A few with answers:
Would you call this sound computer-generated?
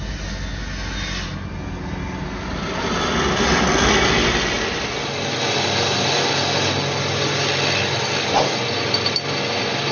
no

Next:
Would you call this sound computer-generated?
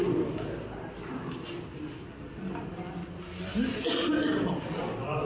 no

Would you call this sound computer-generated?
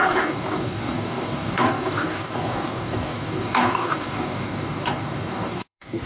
yes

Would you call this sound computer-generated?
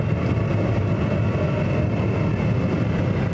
no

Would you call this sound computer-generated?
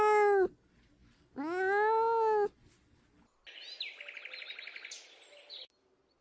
no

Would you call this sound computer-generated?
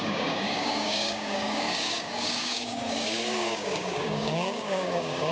yes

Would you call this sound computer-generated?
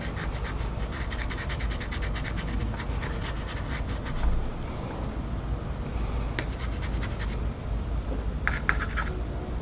no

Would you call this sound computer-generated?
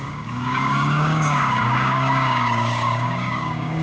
yes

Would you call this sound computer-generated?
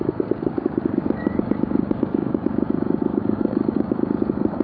yes